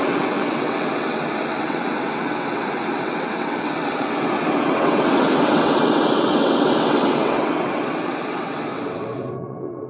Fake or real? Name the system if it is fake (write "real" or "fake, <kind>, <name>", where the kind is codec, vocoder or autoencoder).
fake, vocoder, WaveNeXt